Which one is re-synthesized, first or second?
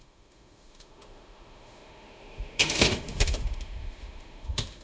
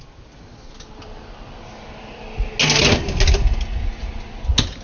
first